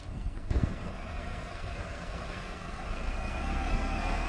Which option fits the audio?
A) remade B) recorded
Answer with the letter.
A